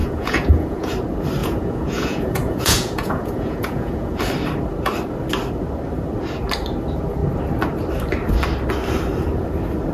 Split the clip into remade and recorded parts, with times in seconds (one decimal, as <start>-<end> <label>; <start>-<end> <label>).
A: 0.0-0.9 remade; 0.9-1.4 recorded; 1.4-4.2 remade; 4.2-9.9 recorded